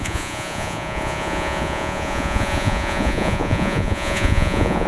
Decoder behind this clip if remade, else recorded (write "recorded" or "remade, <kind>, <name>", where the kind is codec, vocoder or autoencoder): remade, vocoder, Vocos